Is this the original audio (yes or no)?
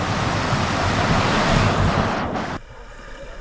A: yes